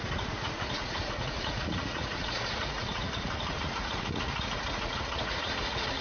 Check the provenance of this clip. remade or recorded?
remade